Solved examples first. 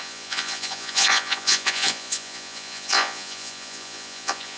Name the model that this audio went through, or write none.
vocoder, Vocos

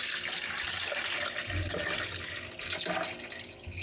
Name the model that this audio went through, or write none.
none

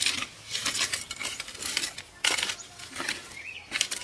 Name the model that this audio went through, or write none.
none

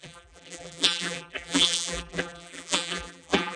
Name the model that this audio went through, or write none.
vocoder, BigVGAN v2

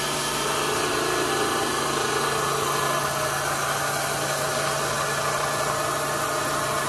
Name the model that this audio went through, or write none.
none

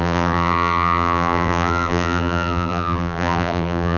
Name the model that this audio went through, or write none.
vocoder, BigVGAN v2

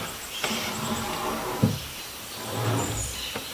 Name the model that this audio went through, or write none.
none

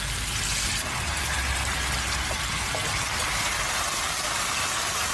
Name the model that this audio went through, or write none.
none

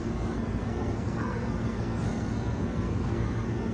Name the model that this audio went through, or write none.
codec, SNAC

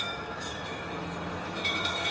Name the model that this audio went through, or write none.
autoencoder, DAC-VAE